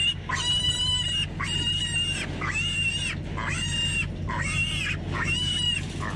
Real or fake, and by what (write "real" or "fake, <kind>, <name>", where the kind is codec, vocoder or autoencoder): real